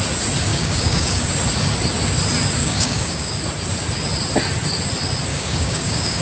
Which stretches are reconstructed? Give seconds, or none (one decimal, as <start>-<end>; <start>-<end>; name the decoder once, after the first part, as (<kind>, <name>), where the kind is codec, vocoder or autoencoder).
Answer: 0.5-1.3 (codec, DAC); 2.6-3.4; 5.3-6.2